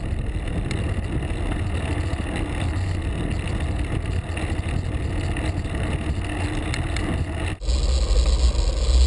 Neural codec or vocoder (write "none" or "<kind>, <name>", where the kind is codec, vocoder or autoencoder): none